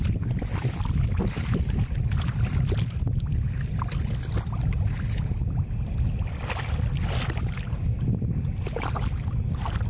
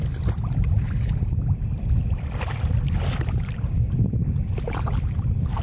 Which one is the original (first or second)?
first